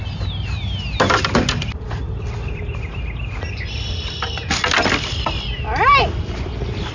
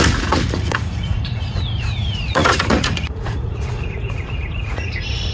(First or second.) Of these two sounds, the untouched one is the first